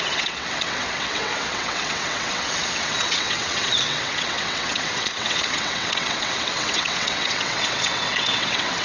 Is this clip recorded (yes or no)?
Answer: no